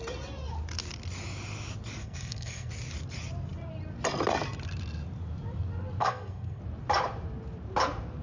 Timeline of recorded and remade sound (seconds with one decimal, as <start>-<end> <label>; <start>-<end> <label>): 0.0-2.0 recorded; 2.0-2.7 remade; 2.7-6.0 recorded; 6.0-6.6 remade; 6.6-8.2 recorded